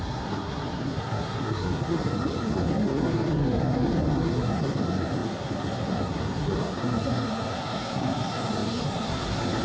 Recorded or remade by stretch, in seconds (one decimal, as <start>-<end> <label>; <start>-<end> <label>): 0.0-9.6 remade